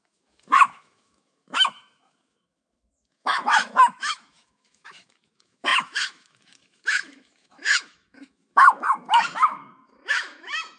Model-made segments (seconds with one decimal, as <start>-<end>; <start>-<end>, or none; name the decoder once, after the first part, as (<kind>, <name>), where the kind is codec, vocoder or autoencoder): 0.0-10.8 (autoencoder, DAC-VAE)